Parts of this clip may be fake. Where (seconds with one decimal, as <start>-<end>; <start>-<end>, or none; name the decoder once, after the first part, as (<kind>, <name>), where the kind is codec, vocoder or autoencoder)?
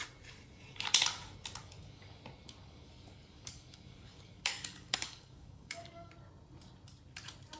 1.6-2.2 (codec, DAC); 2.6-6.1